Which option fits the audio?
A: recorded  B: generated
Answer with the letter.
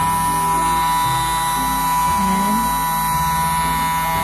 A